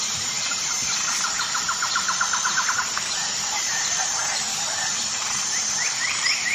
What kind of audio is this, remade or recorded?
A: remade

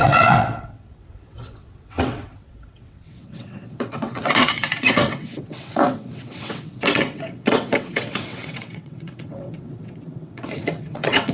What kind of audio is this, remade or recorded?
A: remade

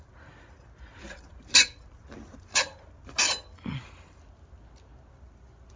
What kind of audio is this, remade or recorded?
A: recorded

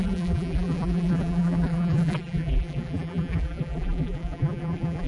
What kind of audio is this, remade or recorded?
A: remade